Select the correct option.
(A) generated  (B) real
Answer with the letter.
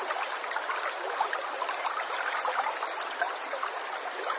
A